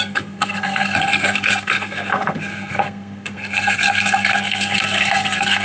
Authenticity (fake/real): fake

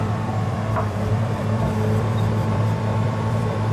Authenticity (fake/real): fake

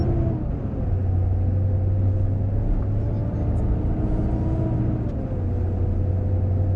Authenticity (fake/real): real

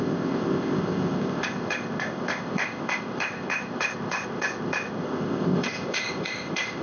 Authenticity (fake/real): fake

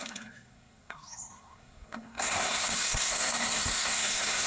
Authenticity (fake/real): fake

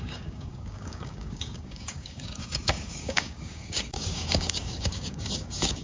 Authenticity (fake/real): fake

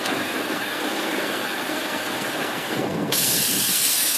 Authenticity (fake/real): fake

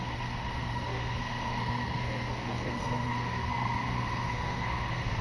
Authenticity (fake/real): fake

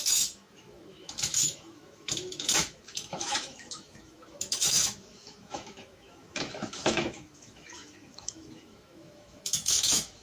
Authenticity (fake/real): fake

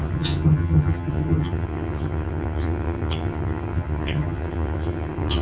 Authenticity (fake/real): fake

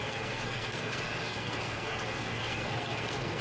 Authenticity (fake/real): fake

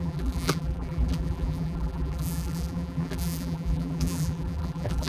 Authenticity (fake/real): fake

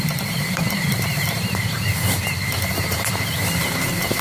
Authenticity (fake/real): fake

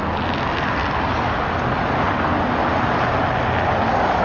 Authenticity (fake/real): real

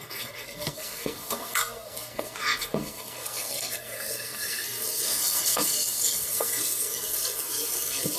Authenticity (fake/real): fake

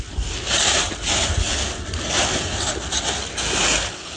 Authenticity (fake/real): real